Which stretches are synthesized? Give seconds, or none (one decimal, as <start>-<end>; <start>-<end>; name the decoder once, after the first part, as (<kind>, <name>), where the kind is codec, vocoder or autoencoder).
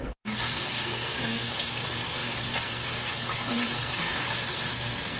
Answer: 0.0-5.2 (codec, SNAC)